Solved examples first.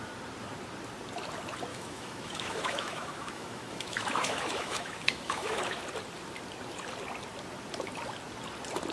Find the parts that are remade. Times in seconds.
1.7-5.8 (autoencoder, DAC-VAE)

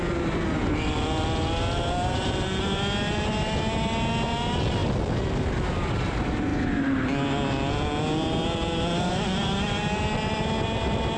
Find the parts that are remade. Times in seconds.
none